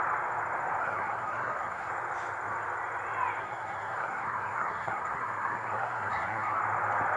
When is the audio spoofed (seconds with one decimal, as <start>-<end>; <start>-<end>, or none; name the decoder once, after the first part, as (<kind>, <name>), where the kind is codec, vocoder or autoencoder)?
0.8-1.9 (codec, SNAC); 3.4-6.6